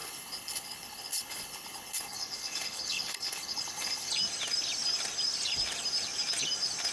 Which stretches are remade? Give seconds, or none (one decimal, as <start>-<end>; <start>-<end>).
0.0-4.1